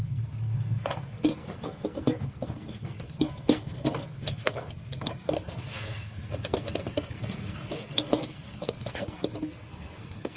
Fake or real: fake